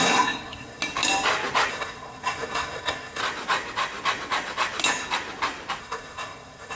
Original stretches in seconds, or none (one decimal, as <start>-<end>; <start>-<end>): 0.8-1.7; 3.2-5.8